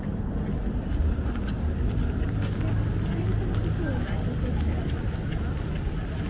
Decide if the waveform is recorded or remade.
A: recorded